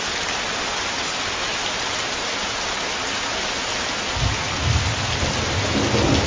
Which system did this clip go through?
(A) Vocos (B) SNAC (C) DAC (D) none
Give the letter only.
D